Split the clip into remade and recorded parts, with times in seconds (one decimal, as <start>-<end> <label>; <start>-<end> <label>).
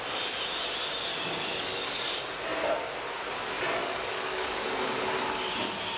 0.0-1.1 recorded; 1.1-2.1 remade; 2.1-3.8 recorded; 3.8-5.5 remade; 5.5-6.0 recorded